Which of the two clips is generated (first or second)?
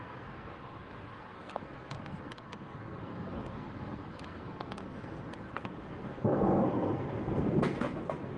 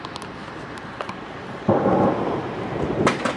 first